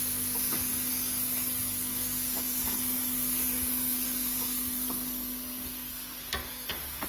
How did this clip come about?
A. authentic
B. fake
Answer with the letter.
B